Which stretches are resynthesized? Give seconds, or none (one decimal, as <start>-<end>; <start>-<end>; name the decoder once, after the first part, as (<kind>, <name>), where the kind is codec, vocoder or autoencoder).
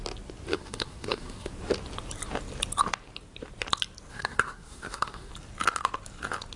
0.5-1.5 (codec, SNAC); 4.1-5.3